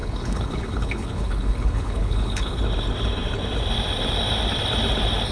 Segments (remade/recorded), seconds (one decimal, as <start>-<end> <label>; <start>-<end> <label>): 0.0-2.6 remade; 2.6-5.3 recorded